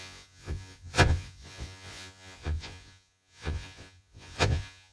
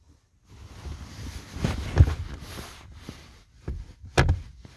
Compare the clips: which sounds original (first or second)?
second